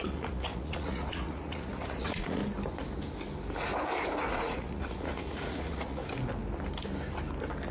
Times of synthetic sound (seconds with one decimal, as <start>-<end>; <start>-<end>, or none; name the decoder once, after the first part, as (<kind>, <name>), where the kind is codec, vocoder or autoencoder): 0.0-2.4 (vocoder, Vocos); 4.3-6.0

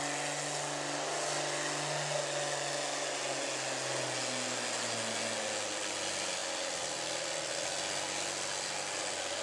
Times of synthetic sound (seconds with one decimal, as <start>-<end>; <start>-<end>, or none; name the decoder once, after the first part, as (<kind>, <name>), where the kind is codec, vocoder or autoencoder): none

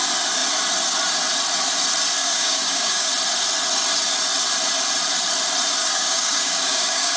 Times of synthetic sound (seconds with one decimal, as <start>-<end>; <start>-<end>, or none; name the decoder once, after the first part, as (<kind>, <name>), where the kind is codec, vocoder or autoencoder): 2.2-3.1 (codec, DAC); 5.8-7.2

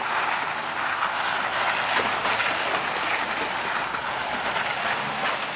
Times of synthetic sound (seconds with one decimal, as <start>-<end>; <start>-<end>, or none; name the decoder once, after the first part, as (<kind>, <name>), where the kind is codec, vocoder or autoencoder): none

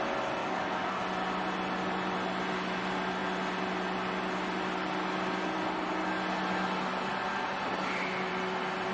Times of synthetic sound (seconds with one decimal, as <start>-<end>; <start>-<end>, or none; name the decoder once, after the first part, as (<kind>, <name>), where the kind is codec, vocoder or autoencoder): 0.4-1.0 (codec, DAC)

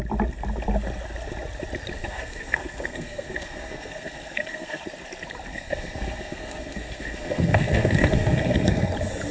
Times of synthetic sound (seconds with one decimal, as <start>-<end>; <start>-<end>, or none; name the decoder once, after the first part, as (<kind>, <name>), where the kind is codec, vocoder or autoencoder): 2.0-4.8 (codec, SNAC); 5.5-8.9